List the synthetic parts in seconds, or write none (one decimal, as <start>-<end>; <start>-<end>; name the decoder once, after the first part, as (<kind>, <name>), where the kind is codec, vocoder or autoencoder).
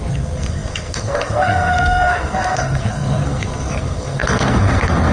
0.0-5.1 (codec, SNAC)